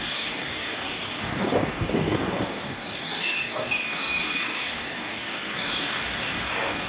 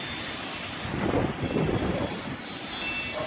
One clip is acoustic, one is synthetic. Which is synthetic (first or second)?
first